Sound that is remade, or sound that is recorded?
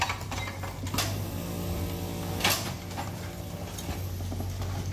recorded